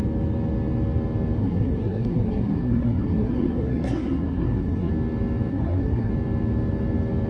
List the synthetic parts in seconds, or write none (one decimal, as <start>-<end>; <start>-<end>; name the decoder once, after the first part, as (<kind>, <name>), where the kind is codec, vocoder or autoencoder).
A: 1.4-4.9 (codec, SNAC); 5.5-6.1